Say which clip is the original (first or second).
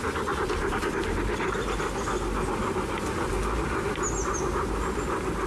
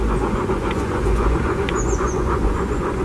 first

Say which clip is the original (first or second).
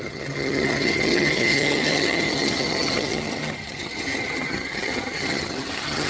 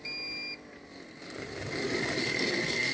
second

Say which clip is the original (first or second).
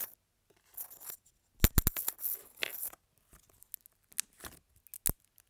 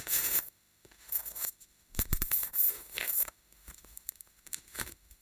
first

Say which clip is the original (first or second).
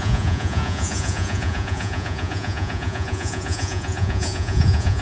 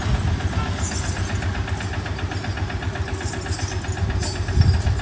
second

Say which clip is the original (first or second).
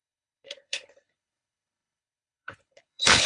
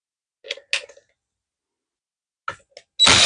second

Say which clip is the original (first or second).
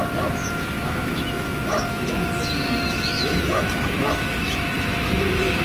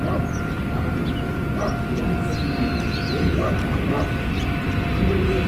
second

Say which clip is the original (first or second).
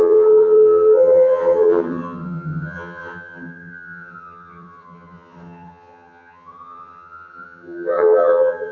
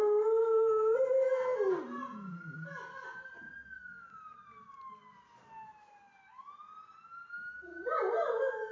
second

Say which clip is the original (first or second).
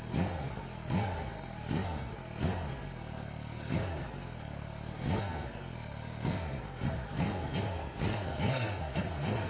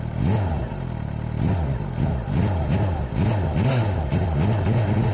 second